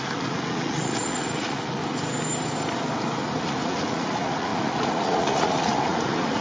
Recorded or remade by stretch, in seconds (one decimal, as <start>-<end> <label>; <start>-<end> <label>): 0.0-1.8 remade; 1.8-3.4 recorded; 3.4-6.4 remade